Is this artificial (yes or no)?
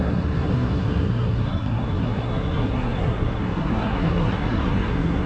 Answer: yes